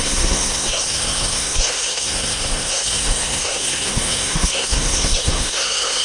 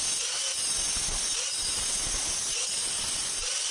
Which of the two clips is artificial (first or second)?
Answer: first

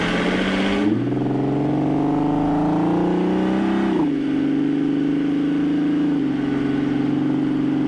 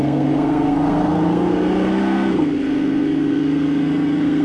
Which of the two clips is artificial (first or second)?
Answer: second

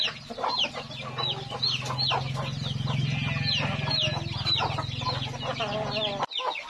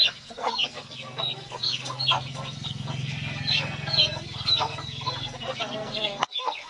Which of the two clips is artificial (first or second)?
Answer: second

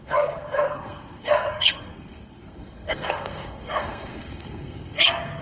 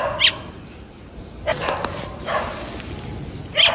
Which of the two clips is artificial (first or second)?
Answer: first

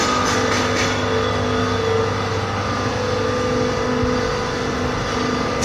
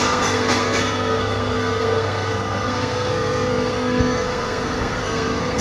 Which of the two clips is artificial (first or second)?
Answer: second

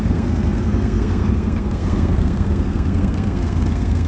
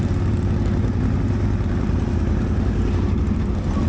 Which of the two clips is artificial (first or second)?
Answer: first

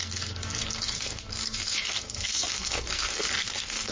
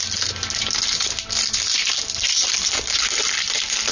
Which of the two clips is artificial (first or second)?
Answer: first